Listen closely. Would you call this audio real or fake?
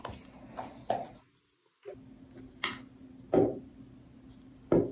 real